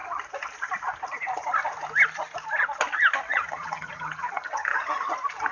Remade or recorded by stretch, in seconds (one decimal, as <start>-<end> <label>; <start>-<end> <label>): 0.0-3.3 recorded; 3.3-4.7 remade; 4.7-5.5 recorded